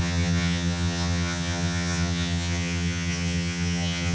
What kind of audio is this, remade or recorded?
remade